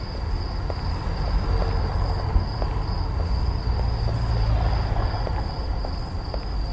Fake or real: real